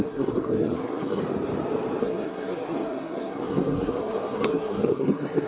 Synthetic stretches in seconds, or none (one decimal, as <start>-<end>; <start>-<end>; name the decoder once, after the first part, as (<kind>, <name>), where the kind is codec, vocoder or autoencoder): 0.0-1.2 (codec, SNAC); 2.0-5.5